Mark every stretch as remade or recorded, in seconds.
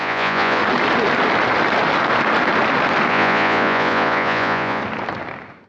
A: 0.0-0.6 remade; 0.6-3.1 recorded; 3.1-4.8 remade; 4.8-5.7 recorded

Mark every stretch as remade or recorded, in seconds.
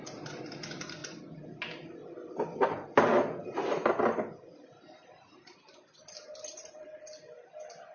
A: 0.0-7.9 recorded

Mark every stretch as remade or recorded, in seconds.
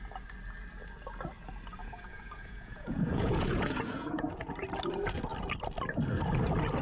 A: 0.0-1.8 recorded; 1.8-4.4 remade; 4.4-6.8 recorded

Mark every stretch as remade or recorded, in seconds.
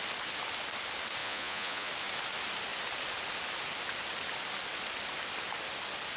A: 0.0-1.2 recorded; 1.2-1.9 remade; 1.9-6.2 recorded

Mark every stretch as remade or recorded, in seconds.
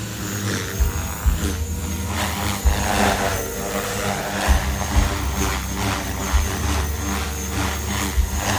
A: 0.0-8.6 recorded